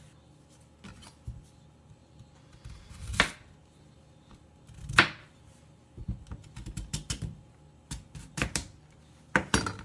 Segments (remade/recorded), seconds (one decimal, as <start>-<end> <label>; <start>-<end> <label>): 0.0-2.0 recorded; 2.0-2.8 remade; 2.8-9.8 recorded